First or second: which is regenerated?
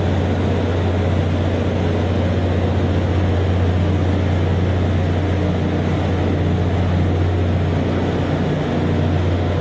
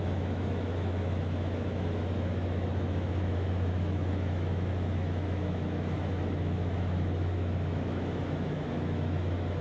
second